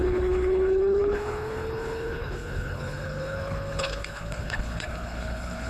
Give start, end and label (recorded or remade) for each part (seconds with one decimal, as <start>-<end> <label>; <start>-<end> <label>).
0.0-5.7 remade